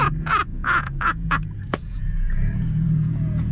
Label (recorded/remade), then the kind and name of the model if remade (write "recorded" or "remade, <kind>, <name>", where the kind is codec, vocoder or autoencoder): remade, vocoder, Vocos